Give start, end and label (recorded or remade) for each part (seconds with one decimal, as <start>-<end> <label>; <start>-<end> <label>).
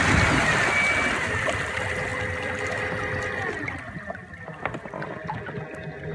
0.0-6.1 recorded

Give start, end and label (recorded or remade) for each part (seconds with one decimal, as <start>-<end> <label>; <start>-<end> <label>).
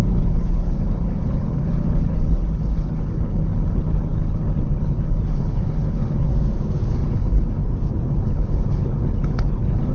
0.0-6.3 remade; 6.3-6.9 recorded; 6.9-7.6 remade; 7.6-8.1 recorded; 8.1-9.9 remade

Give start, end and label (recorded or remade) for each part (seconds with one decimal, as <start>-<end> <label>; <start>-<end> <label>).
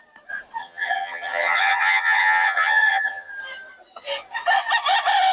0.0-0.6 recorded; 0.6-3.3 remade; 3.3-5.3 recorded